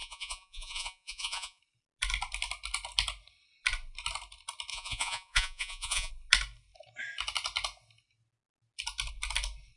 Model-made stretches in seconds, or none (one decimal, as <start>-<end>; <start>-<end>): 0.0-1.6; 4.7-6.1